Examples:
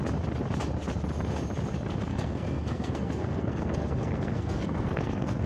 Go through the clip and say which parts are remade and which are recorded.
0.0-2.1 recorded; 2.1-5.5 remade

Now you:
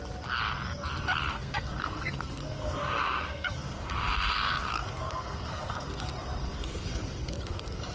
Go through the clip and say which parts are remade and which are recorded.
0.0-1.3 recorded; 1.3-6.0 remade; 6.0-6.4 recorded; 6.4-7.9 remade

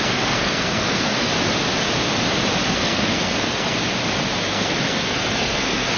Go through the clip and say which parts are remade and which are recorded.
0.0-1.3 remade; 1.3-2.7 recorded; 2.7-3.8 remade; 3.8-4.4 recorded; 4.4-6.0 remade

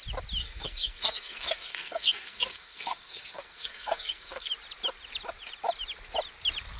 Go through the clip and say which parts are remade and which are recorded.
0.0-0.4 recorded; 0.4-4.5 remade; 4.5-6.8 recorded